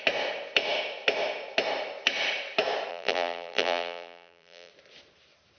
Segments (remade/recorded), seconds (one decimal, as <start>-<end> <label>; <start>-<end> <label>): 0.0-2.9 recorded; 2.9-4.7 remade; 4.7-5.6 recorded